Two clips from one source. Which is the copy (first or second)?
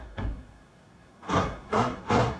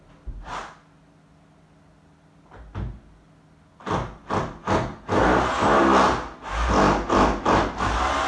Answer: first